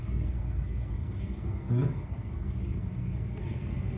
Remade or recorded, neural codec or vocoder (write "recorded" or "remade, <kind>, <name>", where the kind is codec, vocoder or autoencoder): remade, codec, SNAC